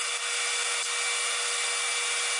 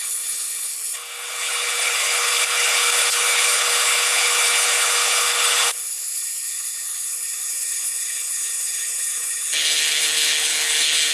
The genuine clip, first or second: first